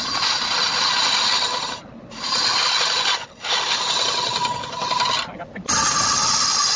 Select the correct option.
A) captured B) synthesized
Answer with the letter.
A